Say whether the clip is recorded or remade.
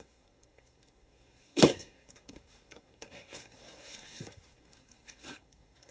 remade